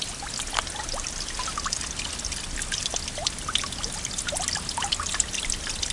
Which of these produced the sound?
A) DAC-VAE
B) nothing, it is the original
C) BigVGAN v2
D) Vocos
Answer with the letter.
B